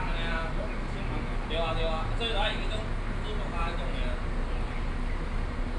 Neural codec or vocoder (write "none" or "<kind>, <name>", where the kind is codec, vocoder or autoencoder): none